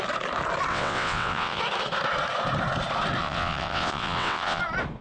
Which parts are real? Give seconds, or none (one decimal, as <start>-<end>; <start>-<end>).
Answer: 0.0-0.7; 1.6-3.2; 4.6-5.0